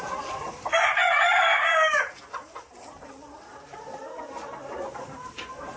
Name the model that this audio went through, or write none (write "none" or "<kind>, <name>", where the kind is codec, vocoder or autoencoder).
vocoder, BigVGAN v2